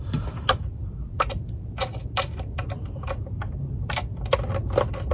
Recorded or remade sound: recorded